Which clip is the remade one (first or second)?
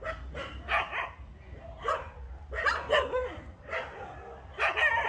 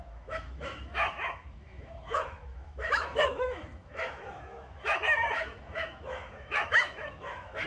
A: second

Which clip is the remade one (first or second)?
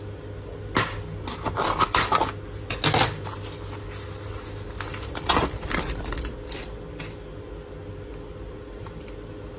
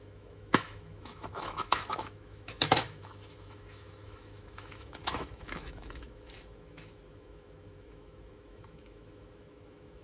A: second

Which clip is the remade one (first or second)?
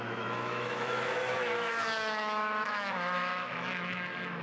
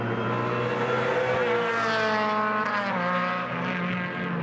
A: first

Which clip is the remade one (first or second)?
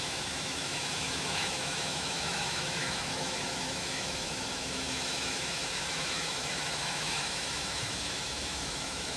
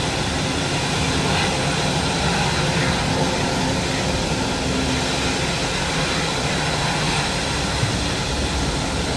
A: first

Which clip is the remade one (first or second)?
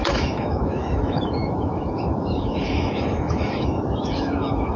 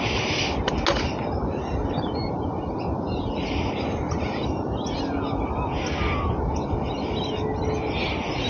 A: first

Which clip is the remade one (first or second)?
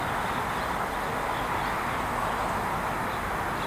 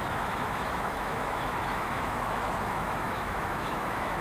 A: second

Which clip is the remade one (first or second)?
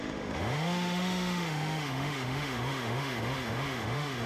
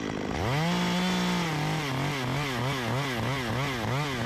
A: first